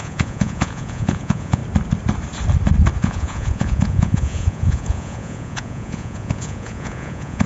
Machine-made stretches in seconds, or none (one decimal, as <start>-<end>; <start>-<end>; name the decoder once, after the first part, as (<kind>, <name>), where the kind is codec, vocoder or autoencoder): 0.0-1.6 (vocoder, Vocos); 3.0-7.5

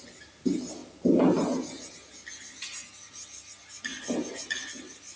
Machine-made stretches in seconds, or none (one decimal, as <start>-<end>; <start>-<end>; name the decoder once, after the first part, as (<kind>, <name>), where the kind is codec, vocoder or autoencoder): none

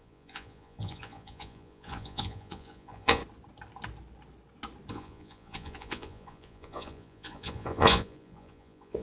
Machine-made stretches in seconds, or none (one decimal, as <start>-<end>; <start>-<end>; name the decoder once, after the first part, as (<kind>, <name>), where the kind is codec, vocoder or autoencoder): 0.0-3.2 (vocoder, Vocos); 4.9-9.0

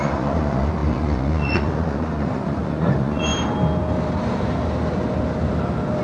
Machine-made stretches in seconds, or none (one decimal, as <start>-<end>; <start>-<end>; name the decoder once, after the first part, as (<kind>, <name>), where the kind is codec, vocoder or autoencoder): 0.0-3.3 (vocoder, Vocos)

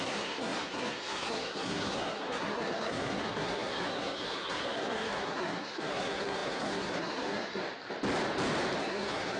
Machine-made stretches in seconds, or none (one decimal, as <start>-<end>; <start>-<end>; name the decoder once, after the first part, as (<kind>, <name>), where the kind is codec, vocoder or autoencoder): 0.0-7.6 (codec, SNAC); 8.8-9.4

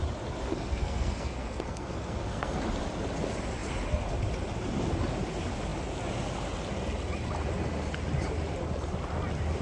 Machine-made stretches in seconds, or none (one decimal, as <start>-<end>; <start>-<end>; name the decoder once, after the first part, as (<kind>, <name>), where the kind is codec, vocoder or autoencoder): 0.5-2.6 (codec, SNAC)

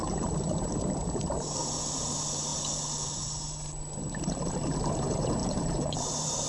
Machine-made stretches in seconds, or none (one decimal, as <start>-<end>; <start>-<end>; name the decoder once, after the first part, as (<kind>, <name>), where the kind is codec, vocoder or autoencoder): 0.0-1.5 (vocoder, BigVGAN v2); 5.4-6.5